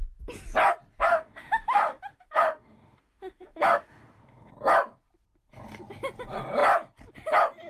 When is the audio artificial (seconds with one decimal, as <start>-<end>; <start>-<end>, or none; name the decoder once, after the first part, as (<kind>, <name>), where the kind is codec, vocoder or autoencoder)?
1.1-4.5 (autoencoder, DAC-VAE)